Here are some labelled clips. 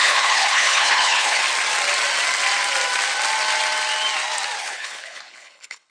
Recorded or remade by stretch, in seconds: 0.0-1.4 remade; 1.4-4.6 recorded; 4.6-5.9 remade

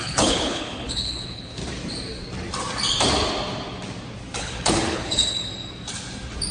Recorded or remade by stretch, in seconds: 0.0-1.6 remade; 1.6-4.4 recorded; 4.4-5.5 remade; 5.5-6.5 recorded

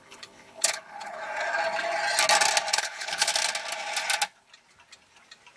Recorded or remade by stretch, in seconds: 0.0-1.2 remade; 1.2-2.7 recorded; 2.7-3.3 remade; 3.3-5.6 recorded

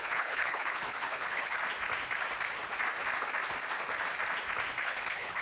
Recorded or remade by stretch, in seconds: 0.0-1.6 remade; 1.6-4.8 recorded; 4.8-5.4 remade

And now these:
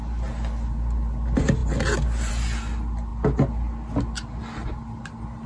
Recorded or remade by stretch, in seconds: 0.0-5.5 recorded